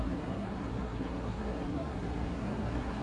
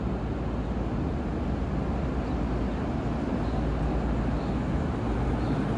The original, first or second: second